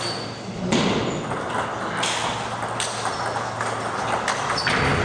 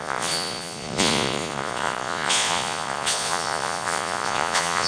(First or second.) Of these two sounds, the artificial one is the second